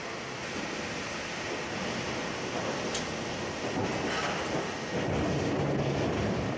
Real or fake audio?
real